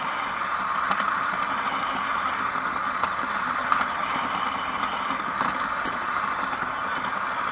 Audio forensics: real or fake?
real